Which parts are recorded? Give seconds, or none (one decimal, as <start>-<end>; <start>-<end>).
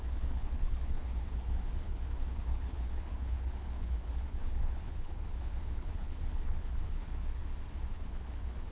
7.4-7.9